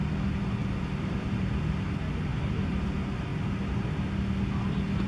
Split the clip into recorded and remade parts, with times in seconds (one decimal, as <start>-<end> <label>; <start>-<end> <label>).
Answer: 0.0-0.6 recorded; 0.6-1.9 remade; 1.9-2.3 recorded; 2.3-2.9 remade; 2.9-5.1 recorded